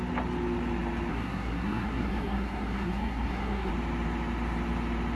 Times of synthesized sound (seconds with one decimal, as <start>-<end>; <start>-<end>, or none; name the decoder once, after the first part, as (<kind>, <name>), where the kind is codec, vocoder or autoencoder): 1.1-3.7 (codec, SNAC)